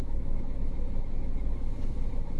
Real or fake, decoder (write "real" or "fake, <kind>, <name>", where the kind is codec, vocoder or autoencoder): fake, autoencoder, DAC-VAE